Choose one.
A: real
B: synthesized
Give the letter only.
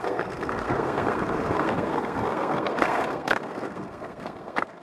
B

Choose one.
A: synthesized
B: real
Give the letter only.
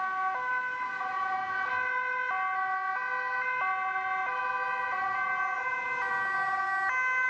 B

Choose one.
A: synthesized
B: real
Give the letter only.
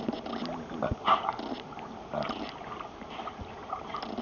B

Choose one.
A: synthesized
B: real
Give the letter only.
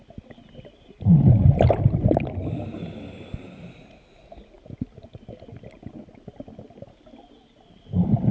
B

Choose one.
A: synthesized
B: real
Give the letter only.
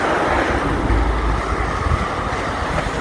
B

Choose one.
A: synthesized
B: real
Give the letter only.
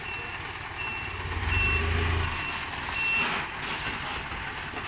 B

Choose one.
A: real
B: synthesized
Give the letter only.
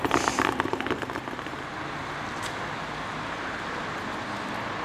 A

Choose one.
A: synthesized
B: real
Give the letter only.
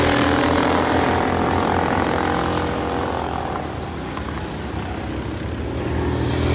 B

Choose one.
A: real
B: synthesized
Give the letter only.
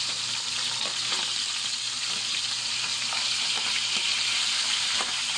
B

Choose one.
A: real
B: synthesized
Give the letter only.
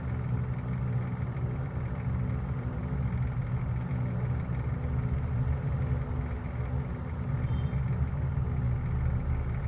A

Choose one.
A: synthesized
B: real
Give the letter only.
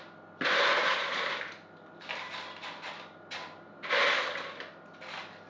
B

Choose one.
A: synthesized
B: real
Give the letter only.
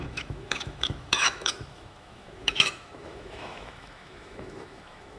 A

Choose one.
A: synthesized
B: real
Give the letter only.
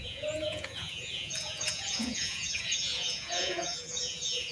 A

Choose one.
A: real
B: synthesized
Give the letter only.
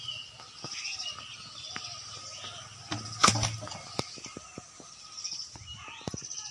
A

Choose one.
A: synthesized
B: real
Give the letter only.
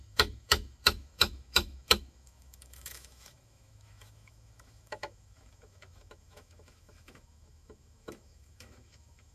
A